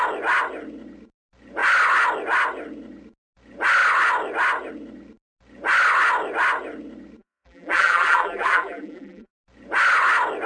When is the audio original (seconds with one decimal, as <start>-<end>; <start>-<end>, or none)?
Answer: 0.0-7.2; 9.3-10.5